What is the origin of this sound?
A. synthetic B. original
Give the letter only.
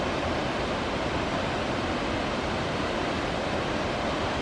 B